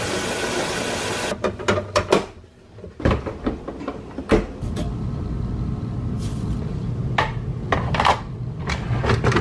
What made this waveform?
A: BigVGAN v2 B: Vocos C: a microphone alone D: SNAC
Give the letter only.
C